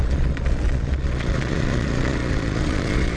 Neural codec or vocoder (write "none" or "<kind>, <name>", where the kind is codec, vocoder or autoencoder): vocoder, Vocos